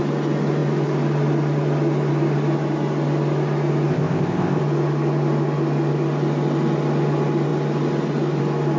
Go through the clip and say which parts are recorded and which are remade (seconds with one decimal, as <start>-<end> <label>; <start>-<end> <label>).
0.0-3.9 recorded; 3.9-4.6 remade; 4.6-8.8 recorded